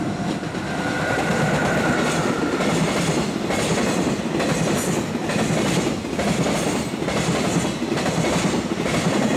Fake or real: real